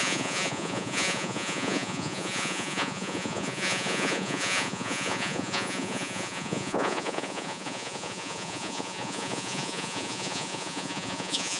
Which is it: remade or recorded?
remade